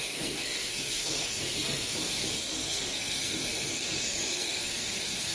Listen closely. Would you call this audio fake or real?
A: fake